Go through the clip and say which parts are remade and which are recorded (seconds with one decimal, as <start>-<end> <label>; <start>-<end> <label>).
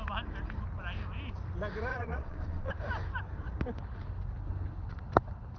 0.0-1.9 recorded; 1.9-2.7 remade; 2.7-5.6 recorded